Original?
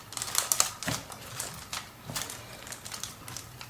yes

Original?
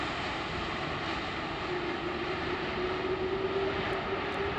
yes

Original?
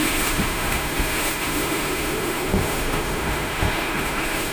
no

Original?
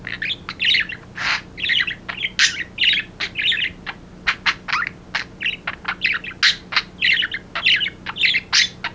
yes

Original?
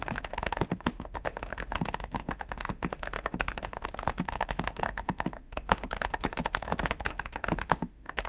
no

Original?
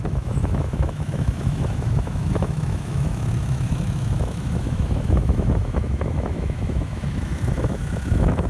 no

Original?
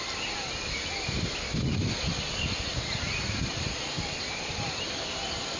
yes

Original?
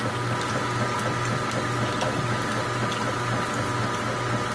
yes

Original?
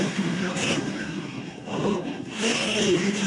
no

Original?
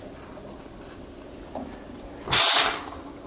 yes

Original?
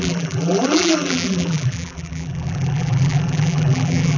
no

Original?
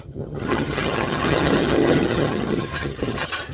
no